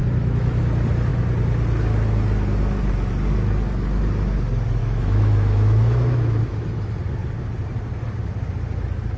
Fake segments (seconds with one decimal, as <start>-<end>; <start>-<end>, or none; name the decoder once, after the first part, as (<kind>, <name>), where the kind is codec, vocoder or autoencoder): 0.0-0.6 (autoencoder, DAC-VAE); 4.8-6.9